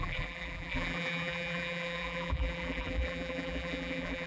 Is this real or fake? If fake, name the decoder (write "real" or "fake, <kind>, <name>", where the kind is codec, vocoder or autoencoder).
fake, vocoder, BigVGAN v2